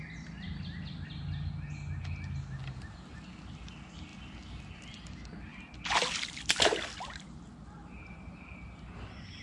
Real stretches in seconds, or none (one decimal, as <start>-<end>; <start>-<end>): 0.0-2.6; 3.4-7.8